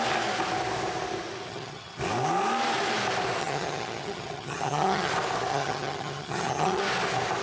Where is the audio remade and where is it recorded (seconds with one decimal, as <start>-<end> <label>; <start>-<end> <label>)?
0.0-1.5 recorded; 1.5-2.0 remade; 2.0-3.4 recorded; 3.4-5.1 remade; 5.1-5.5 recorded; 5.5-6.8 remade; 6.8-7.4 recorded

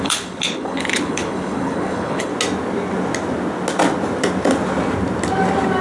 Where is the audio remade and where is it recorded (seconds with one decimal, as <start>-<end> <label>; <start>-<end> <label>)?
0.0-2.3 remade; 2.3-5.8 recorded

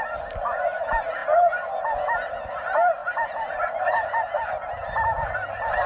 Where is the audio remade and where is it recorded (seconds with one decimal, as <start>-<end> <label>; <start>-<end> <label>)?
0.0-1.2 remade; 1.2-2.5 recorded; 2.5-5.9 remade

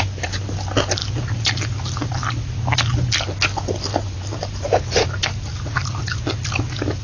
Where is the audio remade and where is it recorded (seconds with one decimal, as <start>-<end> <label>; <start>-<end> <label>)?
0.0-7.0 recorded

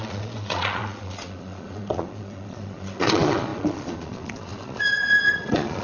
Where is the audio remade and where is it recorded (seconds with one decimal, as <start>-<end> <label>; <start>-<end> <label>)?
0.0-5.8 remade